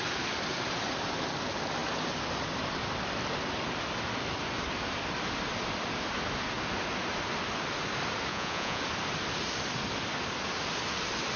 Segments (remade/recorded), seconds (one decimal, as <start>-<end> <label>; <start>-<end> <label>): 0.0-8.3 recorded; 8.3-8.8 remade; 8.8-11.4 recorded

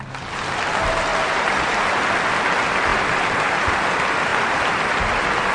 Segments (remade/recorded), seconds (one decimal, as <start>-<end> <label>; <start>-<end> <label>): 0.0-5.5 recorded

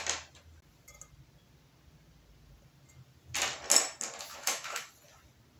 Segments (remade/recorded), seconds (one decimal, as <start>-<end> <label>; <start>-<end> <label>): 0.0-4.3 recorded; 4.3-4.9 remade; 4.9-5.6 recorded

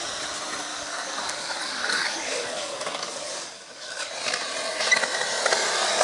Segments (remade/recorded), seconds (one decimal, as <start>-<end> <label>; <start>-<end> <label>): 0.0-0.7 recorded; 0.7-4.1 remade; 4.1-6.0 recorded

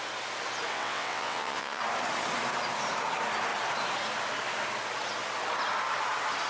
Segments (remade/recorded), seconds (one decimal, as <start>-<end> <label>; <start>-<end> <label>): 0.0-0.7 recorded; 0.7-1.8 remade; 1.8-6.5 recorded

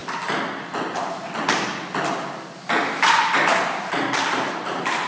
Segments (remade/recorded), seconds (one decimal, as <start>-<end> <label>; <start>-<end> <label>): 0.0-1.2 recorded; 1.2-1.7 remade; 1.7-2.8 recorded; 2.8-5.1 remade

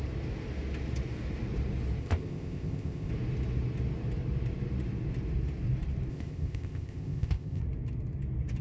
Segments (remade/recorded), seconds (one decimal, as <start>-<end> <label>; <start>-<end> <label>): 0.0-2.0 recorded; 2.0-3.1 remade; 3.1-6.1 recorded; 6.1-7.6 remade; 7.6-8.6 recorded

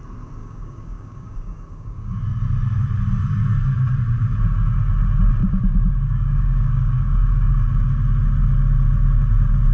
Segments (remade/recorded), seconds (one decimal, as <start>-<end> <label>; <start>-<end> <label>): 0.0-0.4 recorded; 0.4-2.2 remade; 2.2-5.4 recorded; 5.4-7.5 remade; 7.5-9.7 recorded